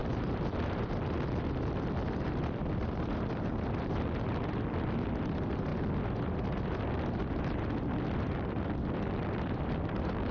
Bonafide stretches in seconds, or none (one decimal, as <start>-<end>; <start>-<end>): 0.0-1.5; 5.7-8.2